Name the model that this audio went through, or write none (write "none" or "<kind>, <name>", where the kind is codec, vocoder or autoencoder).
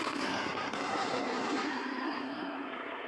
codec, SNAC